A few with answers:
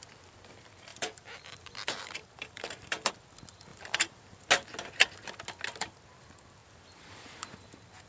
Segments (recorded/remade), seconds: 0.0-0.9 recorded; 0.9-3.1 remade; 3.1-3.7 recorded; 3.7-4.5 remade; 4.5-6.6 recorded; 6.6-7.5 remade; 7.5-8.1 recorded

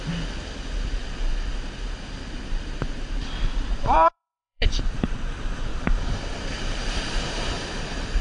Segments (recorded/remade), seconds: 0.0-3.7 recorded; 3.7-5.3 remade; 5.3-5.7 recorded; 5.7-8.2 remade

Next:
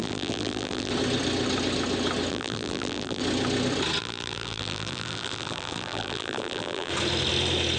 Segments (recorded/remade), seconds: 0.0-0.9 remade; 0.9-2.3 recorded; 2.3-3.2 remade; 3.2-4.0 recorded; 4.0-6.9 remade; 6.9-7.8 recorded